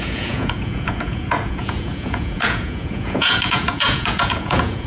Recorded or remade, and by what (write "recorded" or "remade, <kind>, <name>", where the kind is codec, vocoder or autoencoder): remade, vocoder, Vocos